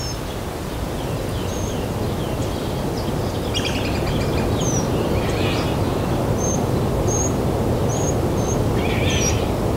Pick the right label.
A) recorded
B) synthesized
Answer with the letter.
A